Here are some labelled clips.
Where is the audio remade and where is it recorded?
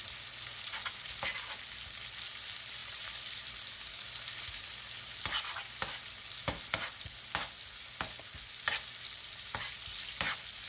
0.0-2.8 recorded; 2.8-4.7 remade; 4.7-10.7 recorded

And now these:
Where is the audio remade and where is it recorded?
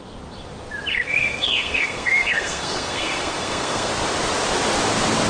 0.0-0.9 recorded; 0.9-3.9 remade; 3.9-5.3 recorded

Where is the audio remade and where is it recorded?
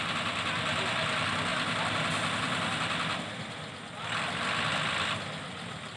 0.0-6.0 recorded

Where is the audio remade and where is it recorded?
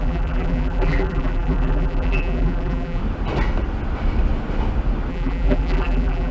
0.0-3.0 remade; 3.0-5.1 recorded; 5.1-6.3 remade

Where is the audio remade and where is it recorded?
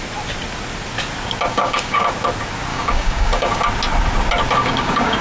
0.0-1.5 recorded; 1.5-2.1 remade; 2.1-2.7 recorded; 2.7-3.6 remade; 3.6-4.6 recorded; 4.6-5.2 remade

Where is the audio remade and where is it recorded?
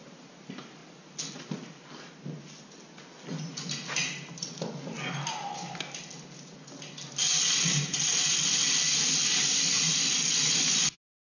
0.0-11.2 recorded